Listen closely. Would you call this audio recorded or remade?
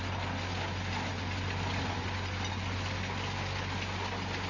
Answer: recorded